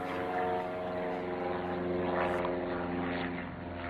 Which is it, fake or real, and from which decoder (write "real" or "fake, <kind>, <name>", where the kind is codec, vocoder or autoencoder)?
real